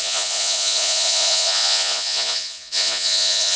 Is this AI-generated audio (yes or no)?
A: yes